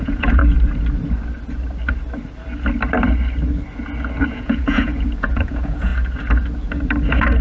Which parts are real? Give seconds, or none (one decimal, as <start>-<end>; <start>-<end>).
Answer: 0.4-4.3; 5.9-7.4

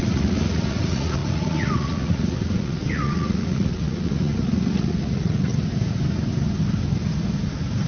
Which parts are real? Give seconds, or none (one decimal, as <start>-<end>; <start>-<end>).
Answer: 5.5-7.9

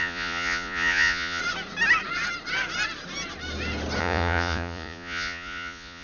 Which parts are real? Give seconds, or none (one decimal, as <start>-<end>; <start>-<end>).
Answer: 1.4-4.0